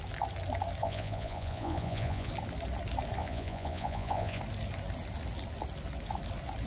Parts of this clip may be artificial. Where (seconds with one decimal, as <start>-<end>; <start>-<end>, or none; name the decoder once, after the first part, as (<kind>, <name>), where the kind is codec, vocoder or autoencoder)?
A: 0.8-2.3 (vocoder, Vocos); 3.2-4.4